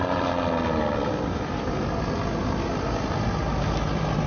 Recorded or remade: recorded